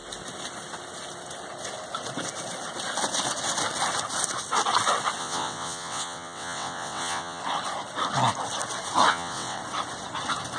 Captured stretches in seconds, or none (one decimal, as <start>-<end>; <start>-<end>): 0.0-5.2; 7.4-9.1; 9.6-10.6